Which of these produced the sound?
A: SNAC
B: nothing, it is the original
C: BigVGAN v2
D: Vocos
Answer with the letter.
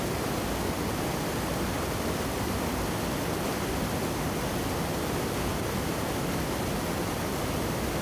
B